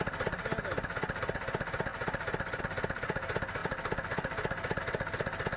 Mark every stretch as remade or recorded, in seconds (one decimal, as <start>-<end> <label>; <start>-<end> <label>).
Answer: 0.0-5.6 recorded